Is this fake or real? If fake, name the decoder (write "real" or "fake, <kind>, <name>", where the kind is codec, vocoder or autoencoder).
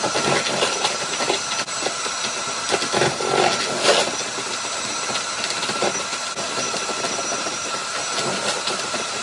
real